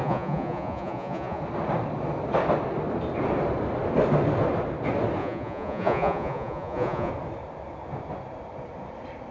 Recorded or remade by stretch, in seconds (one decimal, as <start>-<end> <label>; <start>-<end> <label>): 0.0-1.4 remade; 1.4-5.2 recorded; 5.2-7.1 remade; 7.1-9.3 recorded